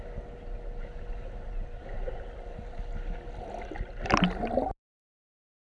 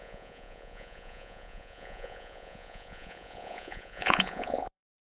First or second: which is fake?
second